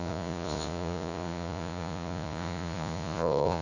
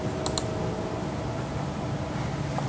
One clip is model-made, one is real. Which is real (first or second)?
second